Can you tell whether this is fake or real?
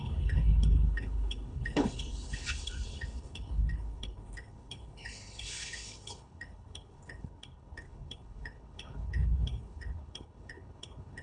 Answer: fake